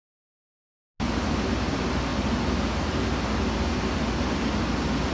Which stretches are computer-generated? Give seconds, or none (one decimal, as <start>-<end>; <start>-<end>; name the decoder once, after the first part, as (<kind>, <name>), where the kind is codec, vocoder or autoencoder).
none